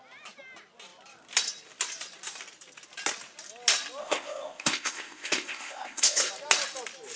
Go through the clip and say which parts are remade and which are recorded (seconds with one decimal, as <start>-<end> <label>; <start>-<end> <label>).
0.0-4.0 recorded; 4.0-6.3 remade; 6.3-7.2 recorded

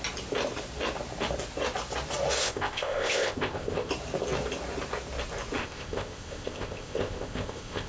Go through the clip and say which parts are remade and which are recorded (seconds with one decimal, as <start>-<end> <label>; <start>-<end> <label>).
0.0-2.4 recorded; 2.4-3.9 remade; 3.9-5.6 recorded; 5.6-7.9 remade